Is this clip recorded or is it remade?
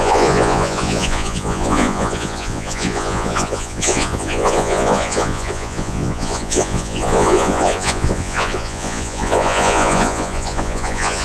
remade